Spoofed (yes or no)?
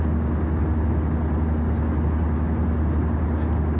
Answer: no